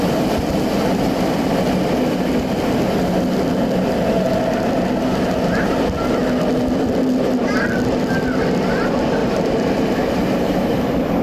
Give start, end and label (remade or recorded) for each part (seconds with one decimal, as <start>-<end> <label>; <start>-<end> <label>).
0.0-9.2 recorded; 9.2-11.2 remade